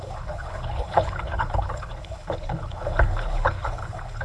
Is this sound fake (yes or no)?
yes